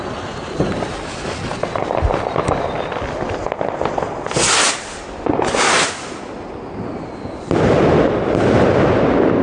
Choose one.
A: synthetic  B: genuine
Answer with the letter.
B